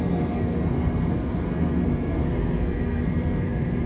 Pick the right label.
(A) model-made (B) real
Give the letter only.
A